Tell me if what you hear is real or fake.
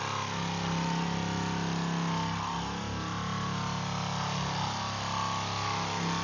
real